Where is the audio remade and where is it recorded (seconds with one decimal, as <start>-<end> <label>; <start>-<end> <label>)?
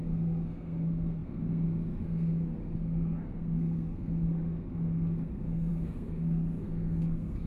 0.0-7.5 remade